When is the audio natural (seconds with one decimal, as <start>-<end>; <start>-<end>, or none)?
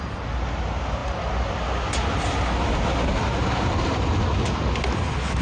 0.0-5.4